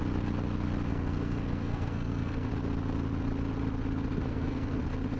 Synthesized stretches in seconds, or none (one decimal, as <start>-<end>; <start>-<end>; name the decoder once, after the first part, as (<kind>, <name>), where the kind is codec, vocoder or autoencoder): 0.9-2.5 (codec, SNAC); 4.3-4.8